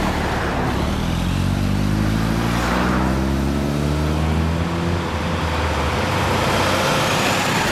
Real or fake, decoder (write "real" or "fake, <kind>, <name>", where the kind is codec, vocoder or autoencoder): real